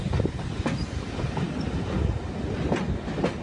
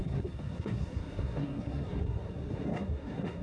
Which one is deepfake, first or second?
second